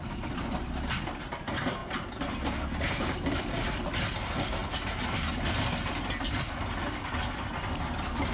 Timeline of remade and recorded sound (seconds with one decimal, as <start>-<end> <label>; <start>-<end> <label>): 0.0-1.3 recorded; 1.3-4.6 remade; 4.6-6.2 recorded; 6.2-8.3 remade